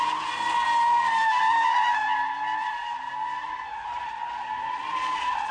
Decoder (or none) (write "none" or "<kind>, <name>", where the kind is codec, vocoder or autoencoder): none